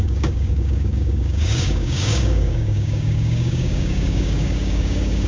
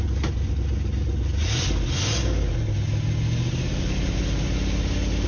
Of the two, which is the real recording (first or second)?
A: second